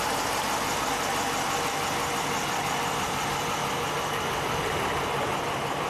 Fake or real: real